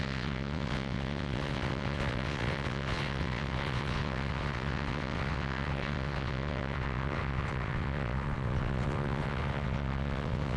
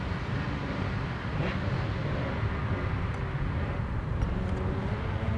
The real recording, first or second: second